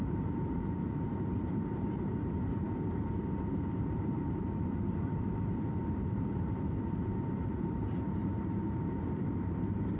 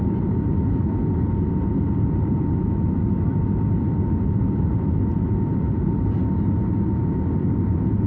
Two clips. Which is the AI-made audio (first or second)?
first